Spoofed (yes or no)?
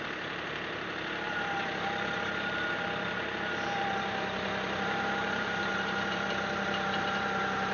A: yes